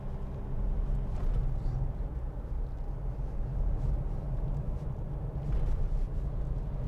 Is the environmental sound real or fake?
real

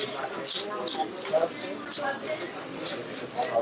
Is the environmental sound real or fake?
real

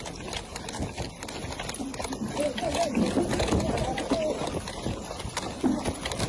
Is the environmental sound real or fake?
real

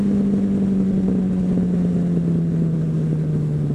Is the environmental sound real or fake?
real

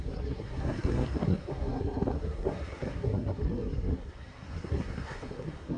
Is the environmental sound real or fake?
fake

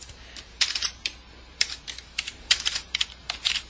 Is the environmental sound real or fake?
fake